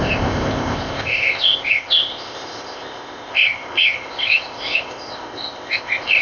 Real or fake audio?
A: fake